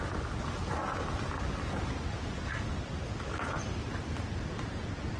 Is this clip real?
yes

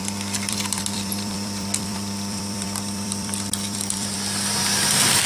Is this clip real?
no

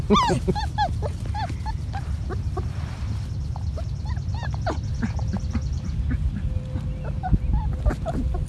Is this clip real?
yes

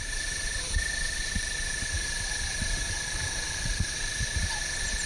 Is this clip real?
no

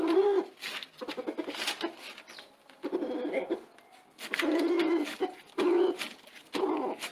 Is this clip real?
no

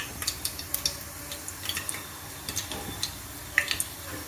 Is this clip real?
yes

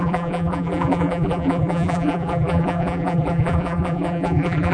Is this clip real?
no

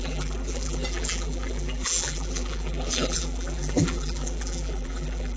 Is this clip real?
no